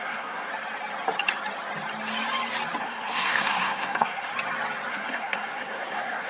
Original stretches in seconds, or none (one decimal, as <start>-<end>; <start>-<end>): 0.5-2.8; 4.3-4.9